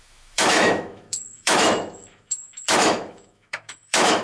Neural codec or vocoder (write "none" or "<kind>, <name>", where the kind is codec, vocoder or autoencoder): autoencoder, DAC-VAE